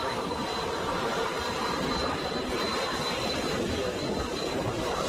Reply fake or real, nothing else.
fake